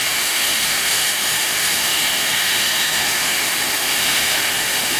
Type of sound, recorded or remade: remade